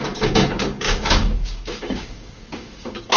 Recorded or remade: remade